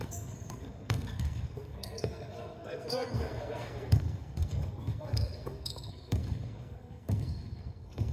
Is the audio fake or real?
fake